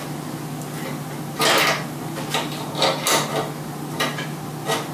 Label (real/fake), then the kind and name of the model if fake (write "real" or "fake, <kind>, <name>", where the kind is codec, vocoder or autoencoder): real